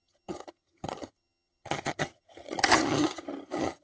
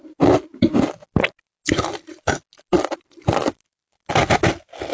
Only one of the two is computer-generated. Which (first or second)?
first